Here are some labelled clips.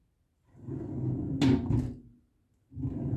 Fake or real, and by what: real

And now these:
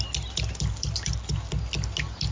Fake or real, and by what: real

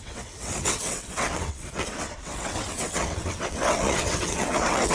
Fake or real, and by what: fake, vocoder, WaveNeXt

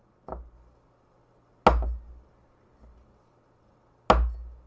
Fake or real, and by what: real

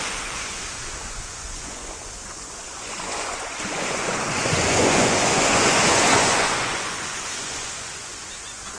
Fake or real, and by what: fake, vocoder, Vocos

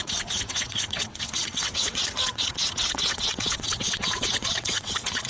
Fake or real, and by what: fake, vocoder, WaveNeXt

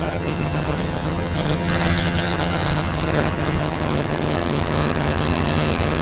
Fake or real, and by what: fake, vocoder, HiFi-GAN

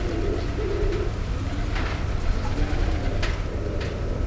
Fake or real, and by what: real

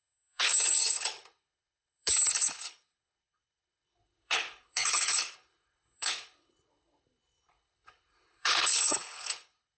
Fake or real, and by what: fake, codec, HILCodec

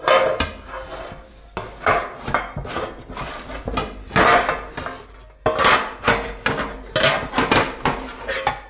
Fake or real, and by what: real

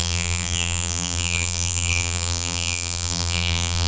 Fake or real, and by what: fake, vocoder, BigVGAN v2